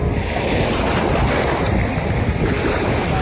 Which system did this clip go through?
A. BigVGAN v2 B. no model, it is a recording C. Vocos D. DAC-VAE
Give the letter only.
B